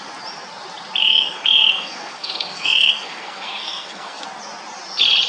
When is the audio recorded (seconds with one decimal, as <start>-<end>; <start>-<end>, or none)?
0.0-1.0; 4.2-5.3

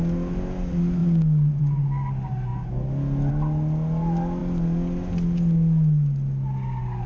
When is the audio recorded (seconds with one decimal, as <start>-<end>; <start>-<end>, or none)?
0.0-7.1

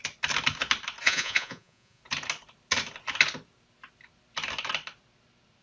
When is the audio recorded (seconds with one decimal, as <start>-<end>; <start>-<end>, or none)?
0.0-1.0; 2.0-5.6

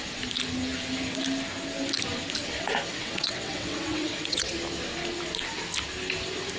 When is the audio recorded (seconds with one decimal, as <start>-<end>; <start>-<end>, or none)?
0.0-2.9; 4.5-6.6

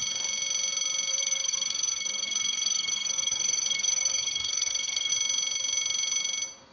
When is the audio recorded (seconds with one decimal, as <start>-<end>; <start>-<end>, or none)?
0.0-1.1; 5.1-6.7

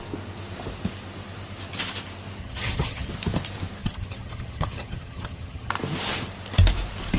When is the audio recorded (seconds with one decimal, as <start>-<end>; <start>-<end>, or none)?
0.0-2.4; 3.1-3.8; 5.7-7.2

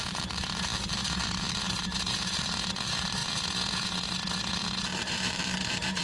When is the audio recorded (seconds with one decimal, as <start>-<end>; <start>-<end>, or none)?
3.2-5.0

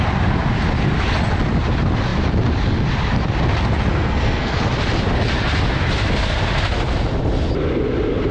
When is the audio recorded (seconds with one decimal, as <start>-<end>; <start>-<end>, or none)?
0.0-3.9; 4.6-8.3